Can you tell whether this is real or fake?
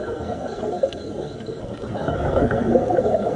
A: fake